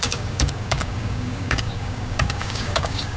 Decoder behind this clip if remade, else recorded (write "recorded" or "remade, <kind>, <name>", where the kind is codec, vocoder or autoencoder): remade, codec, DAC